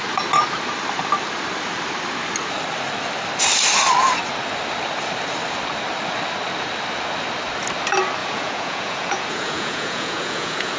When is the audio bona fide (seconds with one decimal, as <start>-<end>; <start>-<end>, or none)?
0.0-8.2